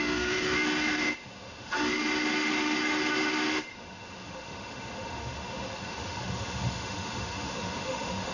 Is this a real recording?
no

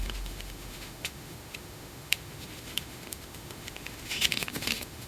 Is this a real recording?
no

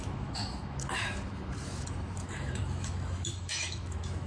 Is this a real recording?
no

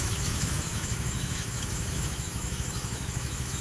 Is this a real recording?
no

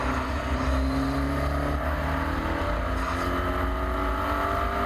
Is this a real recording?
yes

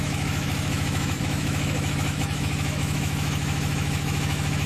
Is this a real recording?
no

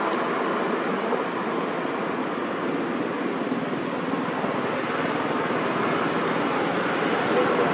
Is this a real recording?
yes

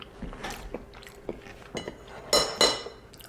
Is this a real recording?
yes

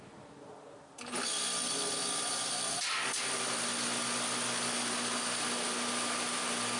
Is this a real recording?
yes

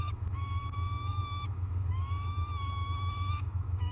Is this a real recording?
no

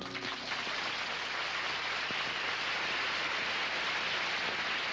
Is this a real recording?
yes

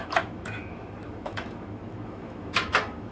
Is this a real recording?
no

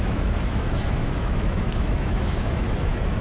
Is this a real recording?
no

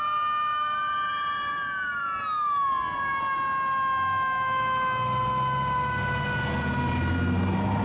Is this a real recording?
yes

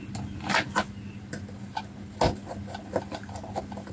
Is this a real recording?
yes